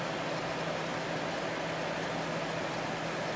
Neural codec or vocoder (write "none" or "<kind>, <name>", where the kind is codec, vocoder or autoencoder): none